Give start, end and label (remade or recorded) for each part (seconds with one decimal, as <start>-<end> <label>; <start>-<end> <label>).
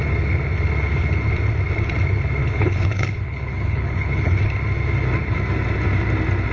0.0-2.4 recorded; 2.4-4.4 remade; 4.4-6.5 recorded